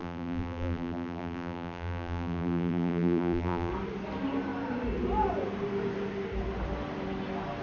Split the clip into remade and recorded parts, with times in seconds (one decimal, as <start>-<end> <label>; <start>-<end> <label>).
0.0-3.7 remade; 3.7-7.6 recorded